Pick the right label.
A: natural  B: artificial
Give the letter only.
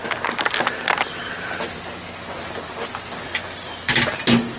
A